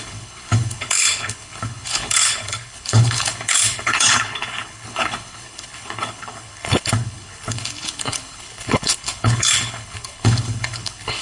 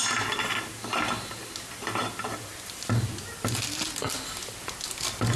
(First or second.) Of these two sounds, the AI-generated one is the first